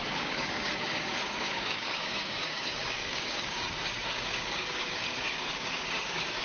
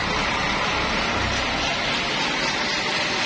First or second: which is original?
second